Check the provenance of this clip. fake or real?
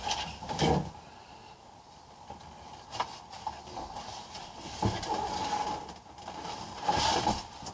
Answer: real